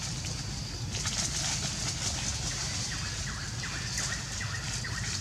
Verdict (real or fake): real